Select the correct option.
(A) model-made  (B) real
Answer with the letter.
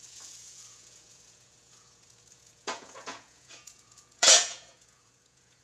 A